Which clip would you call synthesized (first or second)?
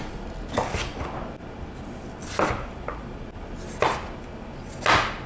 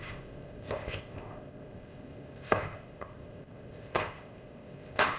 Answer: second